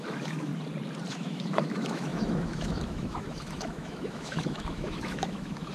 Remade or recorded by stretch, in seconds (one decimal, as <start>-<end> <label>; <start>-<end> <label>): 0.0-0.5 remade; 0.5-1.1 recorded; 1.1-5.7 remade